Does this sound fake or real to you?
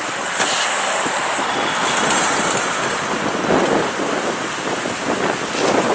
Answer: real